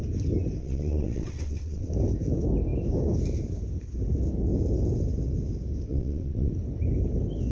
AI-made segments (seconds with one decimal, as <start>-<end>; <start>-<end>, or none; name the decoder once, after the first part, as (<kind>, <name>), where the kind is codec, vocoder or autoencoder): 0.6-1.9 (vocoder, WaveNeXt); 5.9-6.5